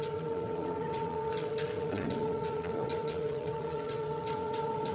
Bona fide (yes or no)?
no